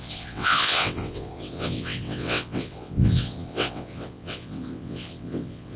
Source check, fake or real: fake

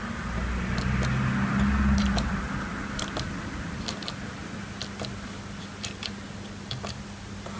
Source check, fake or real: real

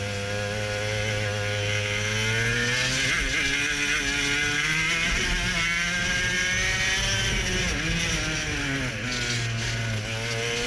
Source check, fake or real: real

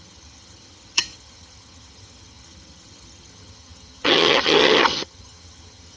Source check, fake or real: fake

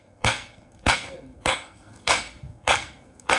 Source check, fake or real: fake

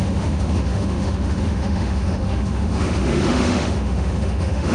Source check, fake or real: fake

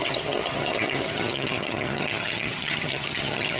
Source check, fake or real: fake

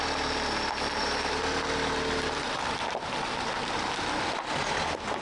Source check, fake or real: real